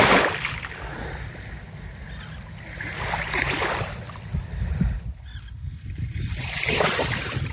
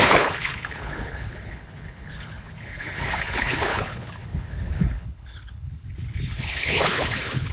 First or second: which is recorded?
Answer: first